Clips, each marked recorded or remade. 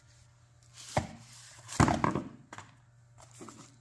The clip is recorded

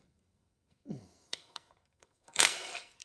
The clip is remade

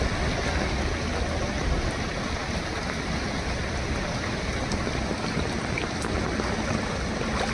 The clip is recorded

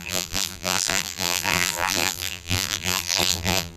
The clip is remade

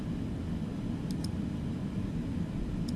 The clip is recorded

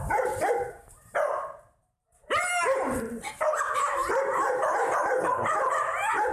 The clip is remade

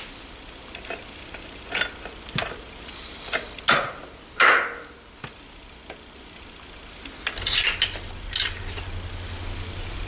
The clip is recorded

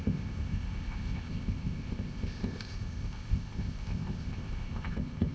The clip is remade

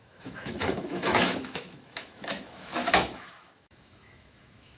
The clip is remade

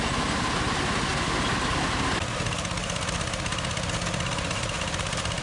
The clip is recorded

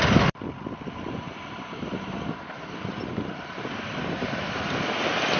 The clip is remade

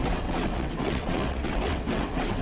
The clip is remade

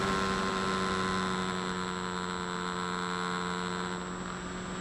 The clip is recorded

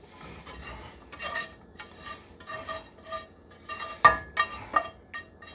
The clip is recorded